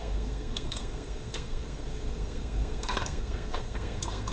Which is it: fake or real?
fake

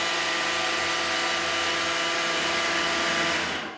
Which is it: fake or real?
real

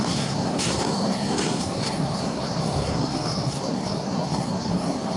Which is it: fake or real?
fake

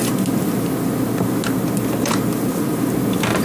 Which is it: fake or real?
real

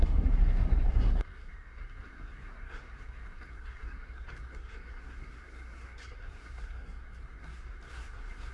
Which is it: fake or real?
fake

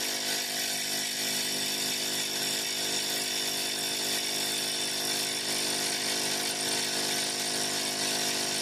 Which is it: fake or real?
real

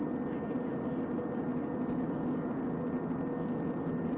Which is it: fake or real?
real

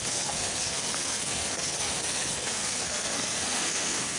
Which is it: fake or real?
fake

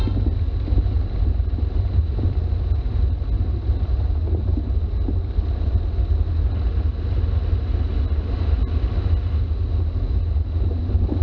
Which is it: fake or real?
real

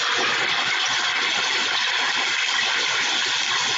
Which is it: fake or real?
real